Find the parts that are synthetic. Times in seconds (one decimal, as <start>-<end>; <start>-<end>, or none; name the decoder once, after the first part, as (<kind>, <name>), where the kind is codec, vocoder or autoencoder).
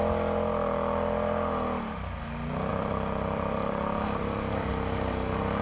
2.7-4.7 (vocoder, BigVGAN v2)